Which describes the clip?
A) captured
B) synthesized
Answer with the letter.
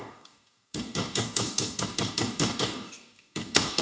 B